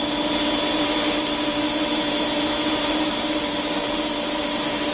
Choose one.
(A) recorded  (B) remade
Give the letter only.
A